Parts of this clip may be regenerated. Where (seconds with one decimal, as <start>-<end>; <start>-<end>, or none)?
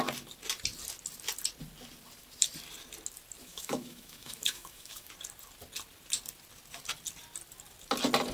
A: 3.4-5.1